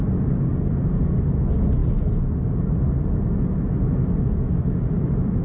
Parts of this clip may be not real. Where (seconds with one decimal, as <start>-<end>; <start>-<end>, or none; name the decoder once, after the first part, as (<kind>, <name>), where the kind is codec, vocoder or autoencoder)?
none